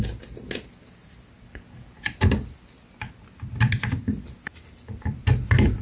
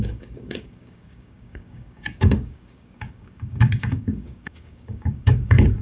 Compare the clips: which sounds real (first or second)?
first